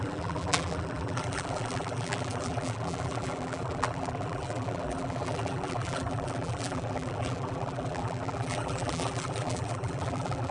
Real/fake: fake